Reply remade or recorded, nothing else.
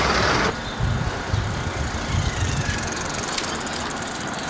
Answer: recorded